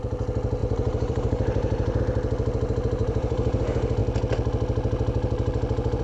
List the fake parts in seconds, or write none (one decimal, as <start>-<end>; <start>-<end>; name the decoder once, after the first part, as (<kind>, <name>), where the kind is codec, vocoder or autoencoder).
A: 0.6-2.0 (vocoder, BigVGAN v2); 3.0-3.6